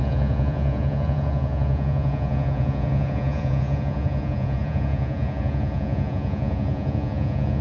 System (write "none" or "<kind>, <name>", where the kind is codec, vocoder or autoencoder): vocoder, Vocos